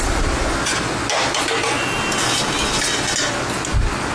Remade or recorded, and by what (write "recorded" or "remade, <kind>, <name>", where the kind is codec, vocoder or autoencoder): recorded